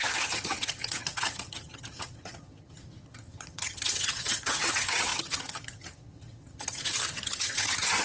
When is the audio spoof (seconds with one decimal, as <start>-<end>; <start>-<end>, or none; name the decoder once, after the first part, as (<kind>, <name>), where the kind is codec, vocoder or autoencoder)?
0.0-8.0 (vocoder, HiFi-GAN)